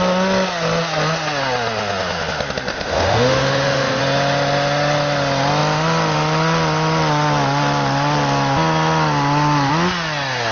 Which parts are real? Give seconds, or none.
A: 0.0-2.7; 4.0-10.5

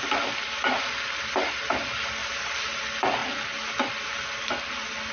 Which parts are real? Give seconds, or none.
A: 0.0-2.2; 2.8-5.1

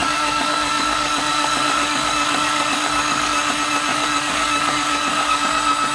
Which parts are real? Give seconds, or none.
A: 3.5-3.9; 5.4-5.9

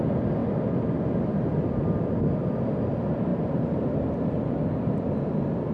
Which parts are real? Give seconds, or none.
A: 0.0-3.3; 3.9-5.7

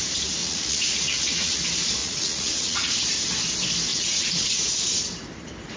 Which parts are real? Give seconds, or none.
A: 0.0-0.4; 1.6-2.0; 2.9-3.9; 4.6-5.8

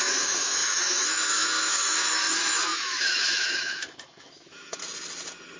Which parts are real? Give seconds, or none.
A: 4.8-5.6

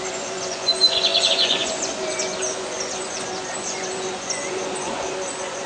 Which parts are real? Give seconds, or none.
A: none

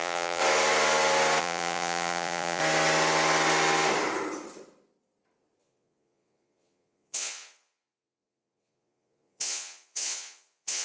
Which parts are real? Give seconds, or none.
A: 0.4-1.4; 2.6-5.6